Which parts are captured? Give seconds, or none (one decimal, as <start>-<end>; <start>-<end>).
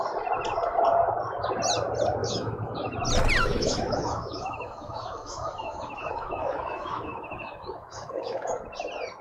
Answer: 0.0-2.2; 2.7-3.4; 8.5-9.2